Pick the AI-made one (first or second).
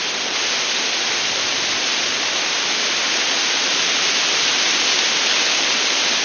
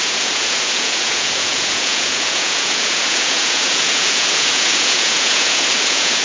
second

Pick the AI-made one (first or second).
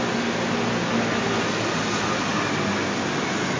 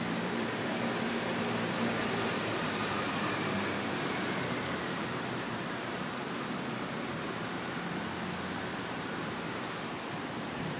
second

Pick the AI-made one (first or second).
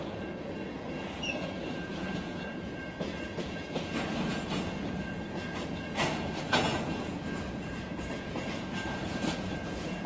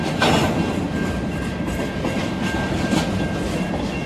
first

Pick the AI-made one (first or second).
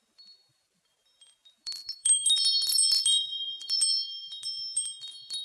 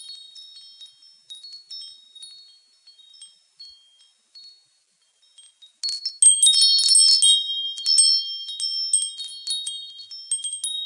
first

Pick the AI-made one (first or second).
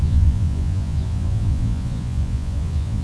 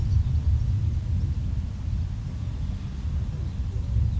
first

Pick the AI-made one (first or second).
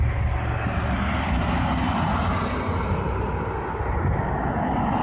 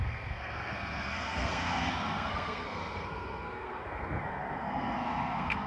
second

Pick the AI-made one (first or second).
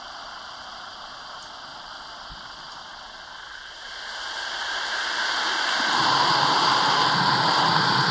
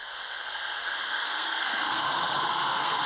second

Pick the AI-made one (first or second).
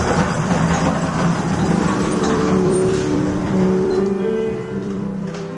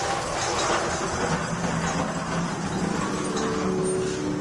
first